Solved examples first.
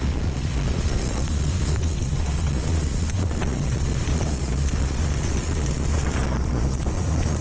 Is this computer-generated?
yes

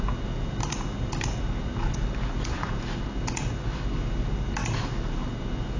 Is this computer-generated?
no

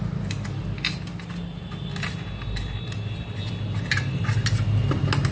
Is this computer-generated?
no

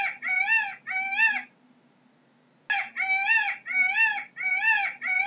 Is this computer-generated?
no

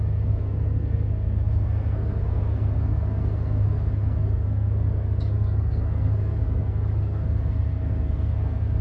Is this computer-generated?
yes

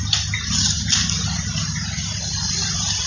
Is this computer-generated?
no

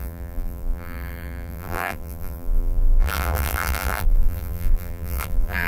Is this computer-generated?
yes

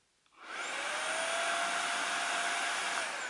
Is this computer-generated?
no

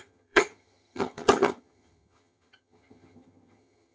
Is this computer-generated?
yes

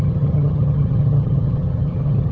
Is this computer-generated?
yes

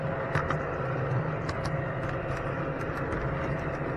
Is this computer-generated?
no